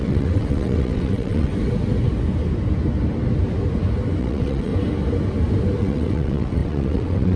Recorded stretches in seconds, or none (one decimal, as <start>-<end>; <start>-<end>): 1.5-4.2; 4.7-5.8

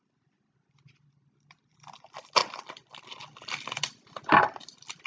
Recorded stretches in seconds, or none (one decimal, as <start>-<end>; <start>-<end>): 0.0-5.1